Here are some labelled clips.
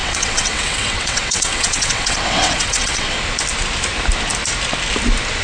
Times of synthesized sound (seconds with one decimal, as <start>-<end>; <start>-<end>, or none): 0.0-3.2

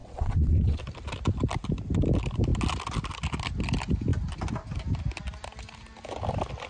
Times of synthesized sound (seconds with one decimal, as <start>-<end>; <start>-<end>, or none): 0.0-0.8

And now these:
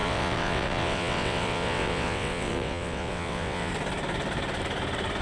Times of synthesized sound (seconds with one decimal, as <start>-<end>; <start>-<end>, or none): 0.0-3.7

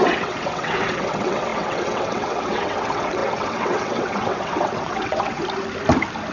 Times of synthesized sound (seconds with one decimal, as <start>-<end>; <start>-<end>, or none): 0.0-5.4